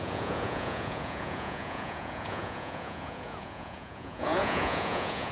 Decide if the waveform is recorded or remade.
remade